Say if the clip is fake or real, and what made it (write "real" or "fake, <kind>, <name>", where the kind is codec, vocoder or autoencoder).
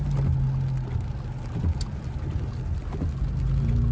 real